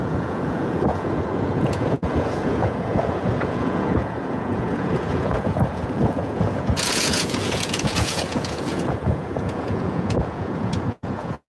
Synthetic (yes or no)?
yes